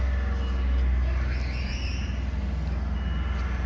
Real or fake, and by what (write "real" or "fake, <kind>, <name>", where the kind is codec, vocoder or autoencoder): real